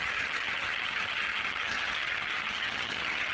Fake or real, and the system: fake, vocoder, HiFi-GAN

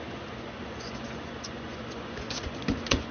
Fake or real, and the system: fake, vocoder, Vocos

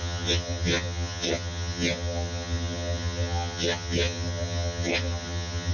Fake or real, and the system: fake, vocoder, HiFi-GAN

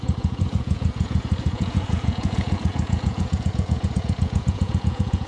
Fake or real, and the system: fake, vocoder, Vocos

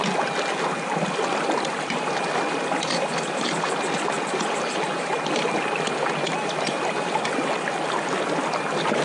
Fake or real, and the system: real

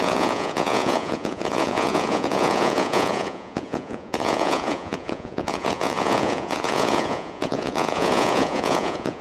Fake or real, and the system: fake, vocoder, Vocos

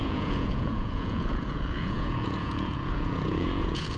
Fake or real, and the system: fake, vocoder, Vocos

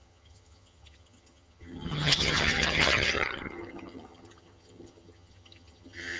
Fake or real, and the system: fake, vocoder, HiFi-GAN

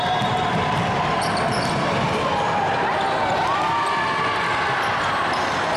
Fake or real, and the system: real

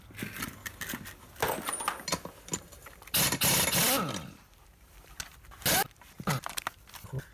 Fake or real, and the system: real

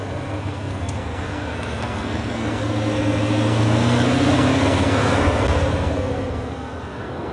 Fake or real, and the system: fake, codec, SNAC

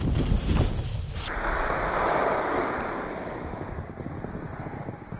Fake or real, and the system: real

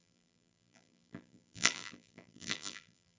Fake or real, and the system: fake, vocoder, BigVGAN v2